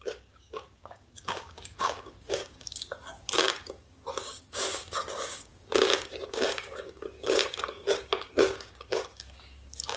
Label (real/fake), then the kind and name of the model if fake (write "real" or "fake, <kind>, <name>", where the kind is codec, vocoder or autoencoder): fake, codec, DAC